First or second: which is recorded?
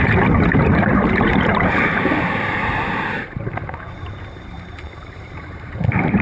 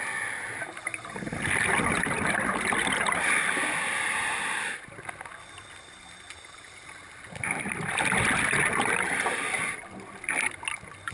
second